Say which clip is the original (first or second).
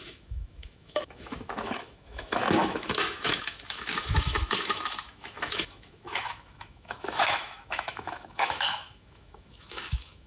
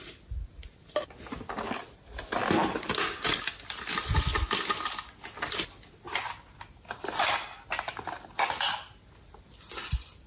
second